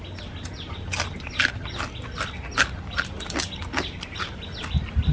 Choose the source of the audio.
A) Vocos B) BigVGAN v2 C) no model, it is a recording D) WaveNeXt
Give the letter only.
C